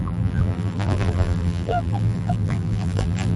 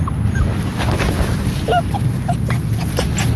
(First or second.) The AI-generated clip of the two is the first